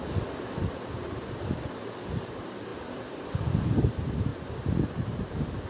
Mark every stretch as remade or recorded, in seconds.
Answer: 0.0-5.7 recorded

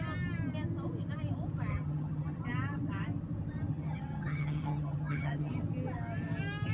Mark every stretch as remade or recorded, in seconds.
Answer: 0.0-1.7 recorded; 1.7-2.4 remade; 2.4-3.7 recorded; 3.7-5.5 remade; 5.5-6.7 recorded

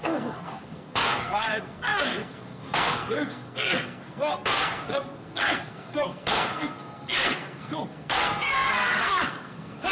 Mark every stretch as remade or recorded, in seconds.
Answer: 0.0-9.9 remade

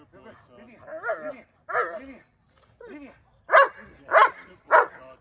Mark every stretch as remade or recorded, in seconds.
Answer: 0.0-5.2 recorded

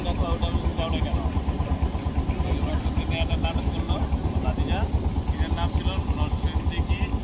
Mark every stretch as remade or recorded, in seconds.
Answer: 0.0-7.2 recorded